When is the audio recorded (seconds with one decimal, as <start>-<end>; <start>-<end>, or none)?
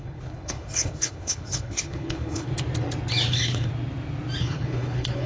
2.5-3.3; 3.7-4.4